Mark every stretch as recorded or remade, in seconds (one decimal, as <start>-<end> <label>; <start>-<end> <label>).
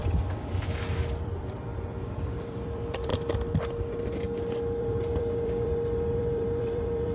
0.0-0.9 recorded; 0.9-3.1 remade; 3.1-4.8 recorded; 4.8-7.1 remade